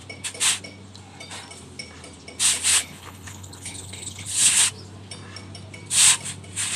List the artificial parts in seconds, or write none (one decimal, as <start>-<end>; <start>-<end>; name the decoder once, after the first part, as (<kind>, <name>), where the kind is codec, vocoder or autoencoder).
2.7-4.6 (codec, HILCodec)

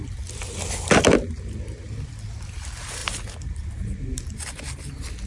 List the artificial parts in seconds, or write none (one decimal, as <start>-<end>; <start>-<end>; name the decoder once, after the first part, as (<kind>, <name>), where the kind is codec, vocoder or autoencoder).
none

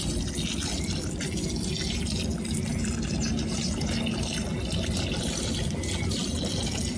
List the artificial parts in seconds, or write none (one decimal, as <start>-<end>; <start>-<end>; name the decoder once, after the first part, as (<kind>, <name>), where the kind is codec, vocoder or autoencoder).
none

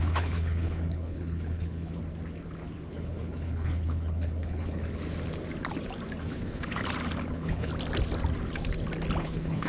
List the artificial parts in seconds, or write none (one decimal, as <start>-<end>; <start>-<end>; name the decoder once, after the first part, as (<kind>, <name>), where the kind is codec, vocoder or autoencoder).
0.0-2.0 (codec, HILCodec); 2.9-4.8; 6.2-6.8; 7.3-7.7; 9.2-9.7